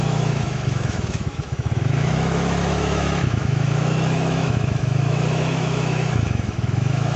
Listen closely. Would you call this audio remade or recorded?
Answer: remade